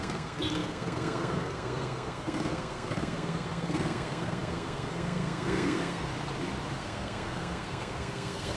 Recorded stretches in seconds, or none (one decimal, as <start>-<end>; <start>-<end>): 6.1-6.7